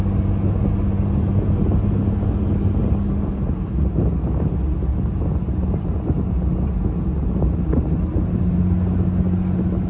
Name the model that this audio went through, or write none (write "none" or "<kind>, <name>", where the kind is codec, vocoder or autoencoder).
none